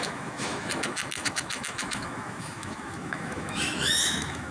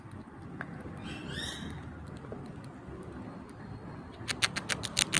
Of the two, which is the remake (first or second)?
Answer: first